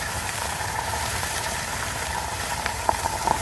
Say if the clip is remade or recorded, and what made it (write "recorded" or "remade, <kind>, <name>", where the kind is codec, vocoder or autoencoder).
remade, vocoder, BigVGAN v2